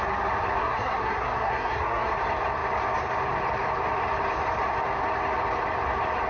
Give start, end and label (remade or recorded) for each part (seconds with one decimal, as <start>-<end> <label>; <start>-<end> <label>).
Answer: 0.0-0.6 recorded; 0.6-2.1 remade; 2.1-6.3 recorded